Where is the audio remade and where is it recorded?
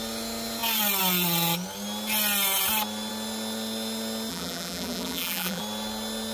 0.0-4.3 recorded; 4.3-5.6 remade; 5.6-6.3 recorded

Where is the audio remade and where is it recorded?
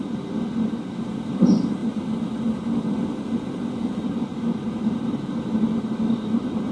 0.0-1.8 remade; 1.8-2.5 recorded; 2.5-6.7 remade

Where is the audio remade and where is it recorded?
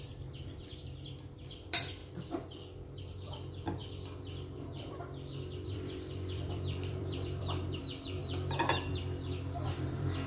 0.0-2.0 remade; 2.0-3.0 recorded; 3.0-3.8 remade; 3.8-4.8 recorded; 4.8-10.3 remade